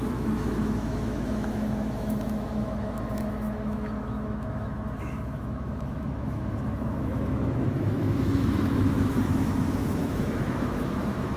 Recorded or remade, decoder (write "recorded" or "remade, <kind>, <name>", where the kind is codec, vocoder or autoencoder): remade, autoencoder, DAC-VAE